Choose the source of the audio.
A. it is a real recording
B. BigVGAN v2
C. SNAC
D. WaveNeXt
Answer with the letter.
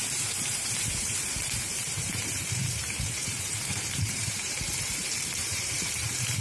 B